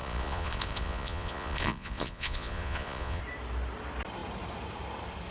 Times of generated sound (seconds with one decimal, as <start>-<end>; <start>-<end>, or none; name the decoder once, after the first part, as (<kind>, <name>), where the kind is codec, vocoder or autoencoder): 0.0-3.2 (vocoder, Vocos)